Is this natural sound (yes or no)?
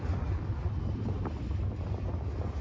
yes